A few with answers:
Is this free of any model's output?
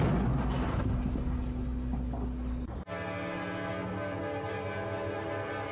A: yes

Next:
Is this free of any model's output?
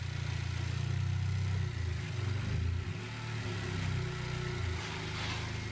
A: yes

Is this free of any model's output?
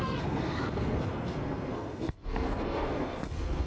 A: no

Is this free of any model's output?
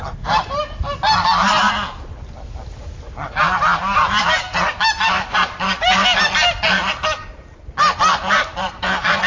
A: yes